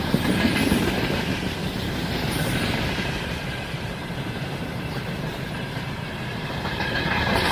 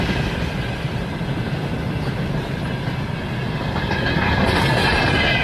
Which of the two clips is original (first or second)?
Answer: second